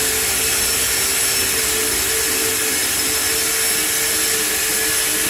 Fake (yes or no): no